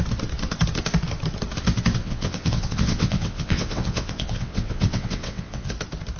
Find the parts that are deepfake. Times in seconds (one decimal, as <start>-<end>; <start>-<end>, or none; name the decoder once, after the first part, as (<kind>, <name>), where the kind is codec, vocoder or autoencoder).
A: 2.0-5.7 (vocoder, WaveNeXt)